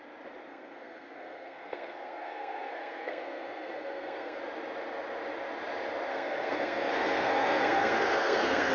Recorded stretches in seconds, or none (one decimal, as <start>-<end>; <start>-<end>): 0.0-0.5; 4.4-6.1